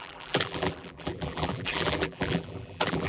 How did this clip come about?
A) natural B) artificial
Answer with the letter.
B